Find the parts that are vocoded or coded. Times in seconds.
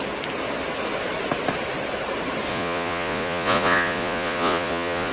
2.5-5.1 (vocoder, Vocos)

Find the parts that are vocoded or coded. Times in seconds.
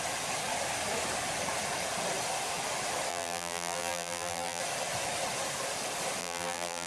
3.1-4.6 (vocoder, BigVGAN v2); 6.2-6.9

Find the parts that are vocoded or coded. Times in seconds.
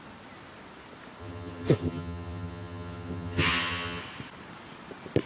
1.2-4.0 (vocoder, HiFi-GAN)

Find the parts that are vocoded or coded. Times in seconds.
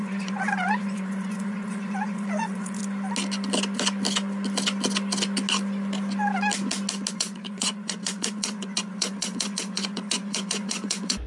0.0-2.8 (vocoder, Vocos); 7.1-11.3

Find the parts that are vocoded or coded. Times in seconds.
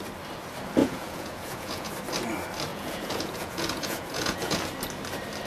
0.8-1.9 (vocoder, Vocos); 2.7-4.6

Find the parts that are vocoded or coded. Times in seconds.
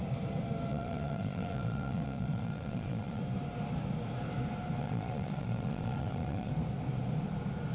0.7-3.2 (vocoder, Vocos); 4.8-6.5